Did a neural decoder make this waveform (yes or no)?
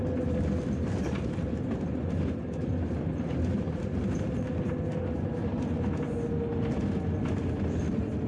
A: no